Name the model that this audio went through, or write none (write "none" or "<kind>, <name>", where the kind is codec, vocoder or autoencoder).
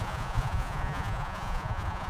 vocoder, Vocos